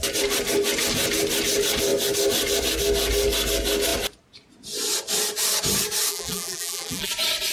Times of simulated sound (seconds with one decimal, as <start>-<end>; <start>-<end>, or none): 6.1-7.1